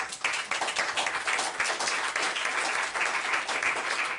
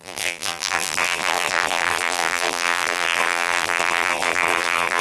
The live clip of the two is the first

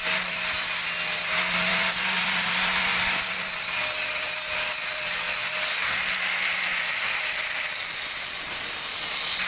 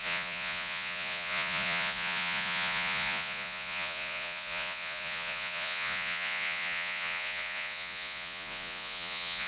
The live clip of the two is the first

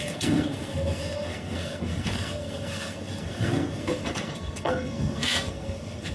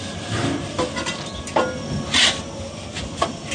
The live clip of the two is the second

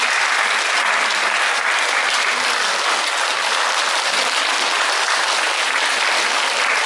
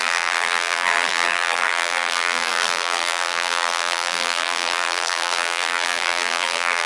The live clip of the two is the first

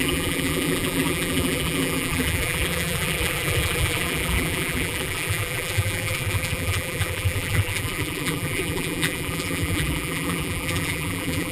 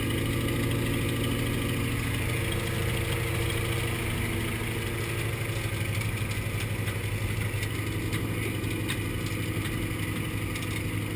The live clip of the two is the second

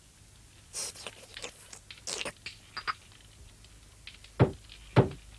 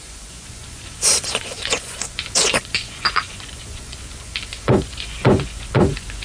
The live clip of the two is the first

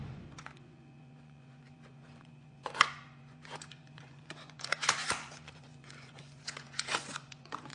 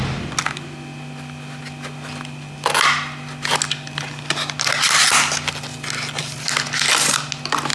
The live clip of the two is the second